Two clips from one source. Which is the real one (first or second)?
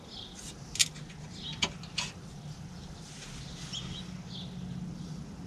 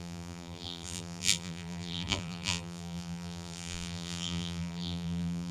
first